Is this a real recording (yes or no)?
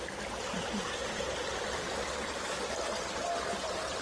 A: yes